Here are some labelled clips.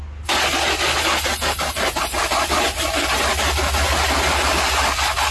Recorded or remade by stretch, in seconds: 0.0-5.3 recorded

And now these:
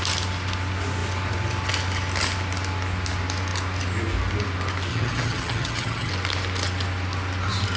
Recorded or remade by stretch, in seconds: 0.0-4.9 recorded; 4.9-6.1 remade; 6.1-7.8 recorded

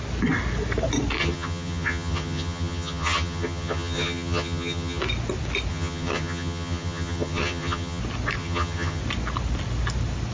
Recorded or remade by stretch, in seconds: 0.0-1.2 recorded; 1.2-5.0 remade; 5.0-5.7 recorded; 5.7-8.0 remade; 8.0-8.4 recorded; 8.4-9.0 remade; 9.0-10.3 recorded

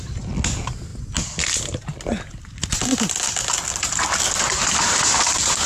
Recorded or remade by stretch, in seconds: 0.0-5.7 recorded

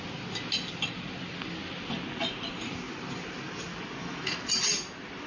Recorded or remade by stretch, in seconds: 0.0-4.0 recorded; 4.0-4.5 remade; 4.5-5.3 recorded